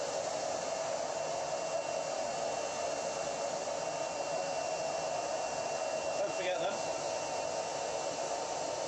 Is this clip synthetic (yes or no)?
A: no